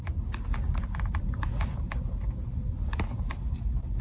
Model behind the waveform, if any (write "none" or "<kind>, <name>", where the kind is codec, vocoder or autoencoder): none